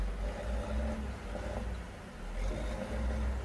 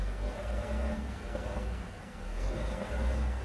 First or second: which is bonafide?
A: first